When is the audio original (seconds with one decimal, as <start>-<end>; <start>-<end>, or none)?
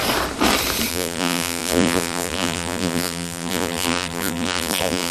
0.0-0.9